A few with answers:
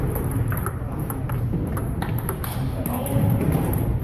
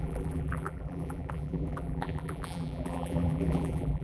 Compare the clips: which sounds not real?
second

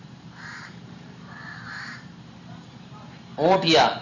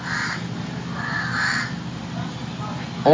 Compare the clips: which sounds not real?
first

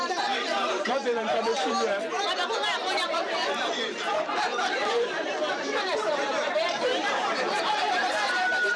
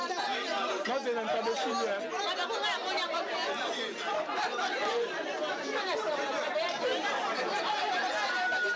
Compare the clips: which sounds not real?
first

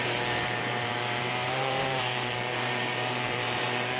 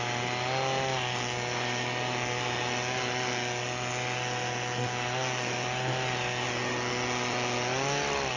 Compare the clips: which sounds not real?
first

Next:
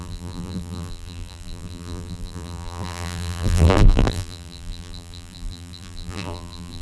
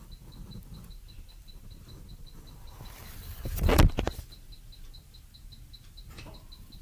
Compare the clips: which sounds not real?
first